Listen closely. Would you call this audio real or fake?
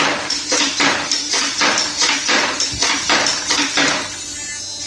real